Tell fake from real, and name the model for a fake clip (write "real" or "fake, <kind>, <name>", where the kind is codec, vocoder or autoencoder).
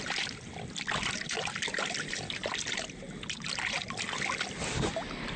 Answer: real